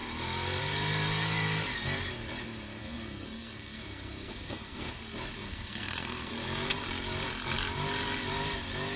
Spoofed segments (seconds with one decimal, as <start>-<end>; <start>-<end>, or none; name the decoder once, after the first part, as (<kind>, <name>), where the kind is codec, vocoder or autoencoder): 2.8-5.0 (codec, SNAC); 5.4-6.3

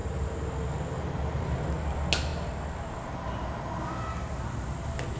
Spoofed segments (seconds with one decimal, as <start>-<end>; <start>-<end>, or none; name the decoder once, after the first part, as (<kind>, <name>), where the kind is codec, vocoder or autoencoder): none

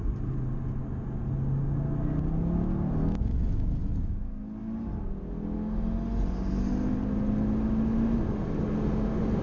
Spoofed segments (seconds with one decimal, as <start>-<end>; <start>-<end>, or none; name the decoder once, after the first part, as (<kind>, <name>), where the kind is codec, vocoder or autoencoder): none